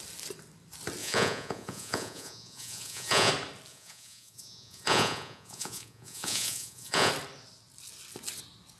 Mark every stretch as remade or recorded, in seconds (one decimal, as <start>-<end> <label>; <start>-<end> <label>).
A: 0.0-1.0 recorded; 1.0-3.3 remade; 3.3-3.7 recorded; 3.7-7.1 remade; 7.1-8.8 recorded